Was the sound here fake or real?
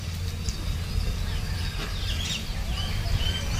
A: real